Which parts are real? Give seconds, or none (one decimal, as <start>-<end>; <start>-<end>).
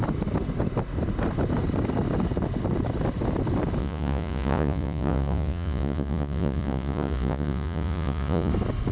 0.0-3.8; 8.5-8.9